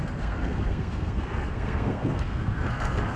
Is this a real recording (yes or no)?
no